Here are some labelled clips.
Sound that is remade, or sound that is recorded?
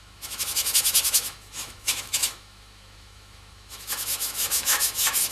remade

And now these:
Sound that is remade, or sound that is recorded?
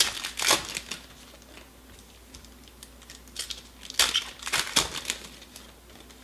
recorded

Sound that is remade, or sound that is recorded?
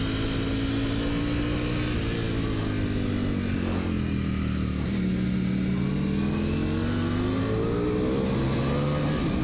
recorded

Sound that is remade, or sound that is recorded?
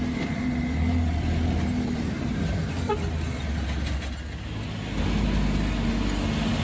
recorded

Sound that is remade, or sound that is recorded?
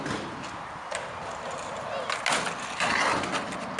recorded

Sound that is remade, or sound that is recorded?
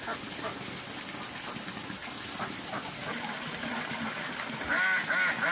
recorded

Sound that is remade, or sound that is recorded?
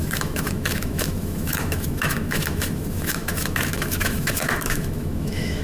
remade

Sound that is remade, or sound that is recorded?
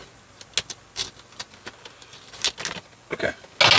recorded